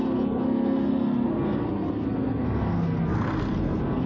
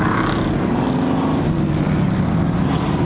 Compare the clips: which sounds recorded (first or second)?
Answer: second